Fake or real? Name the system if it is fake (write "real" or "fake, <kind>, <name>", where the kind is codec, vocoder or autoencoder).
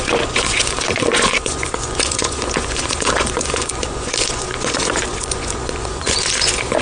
fake, vocoder, Vocos